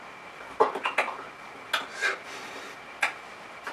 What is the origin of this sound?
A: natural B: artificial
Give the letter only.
A